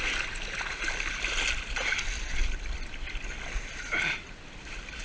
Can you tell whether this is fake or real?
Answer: real